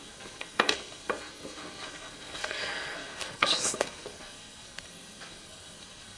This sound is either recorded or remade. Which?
remade